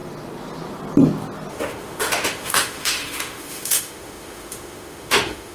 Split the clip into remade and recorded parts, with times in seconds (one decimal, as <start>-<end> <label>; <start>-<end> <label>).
0.0-1.5 recorded; 1.5-5.5 remade